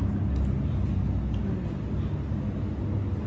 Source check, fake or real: real